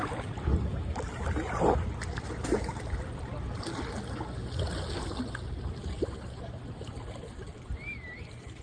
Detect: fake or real real